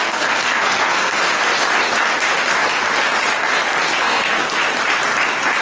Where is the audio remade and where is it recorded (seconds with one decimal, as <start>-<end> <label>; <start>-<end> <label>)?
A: 0.0-1.3 remade; 1.3-4.0 recorded; 4.0-4.6 remade; 4.6-5.6 recorded